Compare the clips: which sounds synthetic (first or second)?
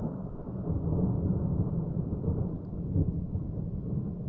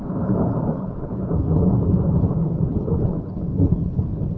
second